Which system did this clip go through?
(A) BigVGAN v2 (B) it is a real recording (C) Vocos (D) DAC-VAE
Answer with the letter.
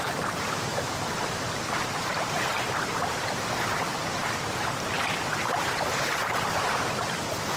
A